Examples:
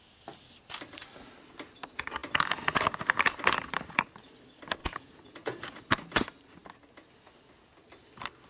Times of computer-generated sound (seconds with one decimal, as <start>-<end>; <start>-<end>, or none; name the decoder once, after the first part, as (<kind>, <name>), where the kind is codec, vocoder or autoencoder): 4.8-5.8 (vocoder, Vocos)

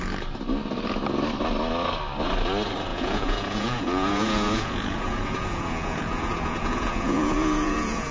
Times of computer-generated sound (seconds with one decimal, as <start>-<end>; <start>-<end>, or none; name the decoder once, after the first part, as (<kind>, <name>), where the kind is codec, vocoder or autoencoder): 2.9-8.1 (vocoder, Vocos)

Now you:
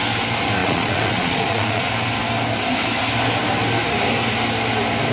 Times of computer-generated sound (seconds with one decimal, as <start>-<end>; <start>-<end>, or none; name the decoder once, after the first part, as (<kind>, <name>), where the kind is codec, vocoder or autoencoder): 0.6-1.9 (vocoder, Vocos)